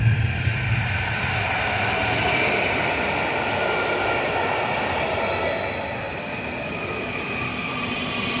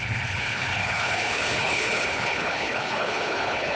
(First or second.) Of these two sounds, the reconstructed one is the second